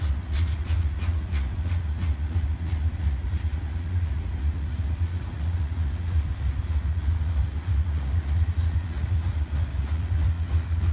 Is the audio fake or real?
fake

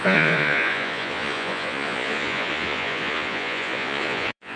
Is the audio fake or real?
fake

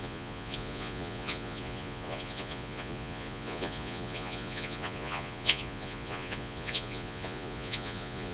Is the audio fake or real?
fake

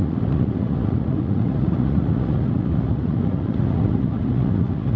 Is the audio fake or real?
fake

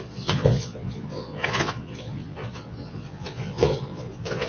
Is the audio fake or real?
fake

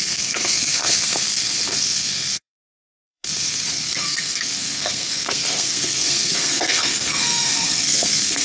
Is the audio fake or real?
fake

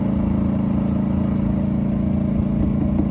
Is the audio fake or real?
real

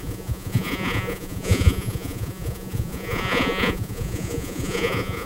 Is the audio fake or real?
fake